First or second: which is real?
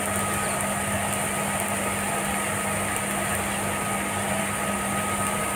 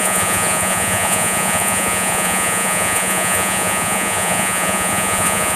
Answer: first